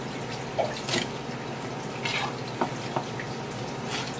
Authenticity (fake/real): real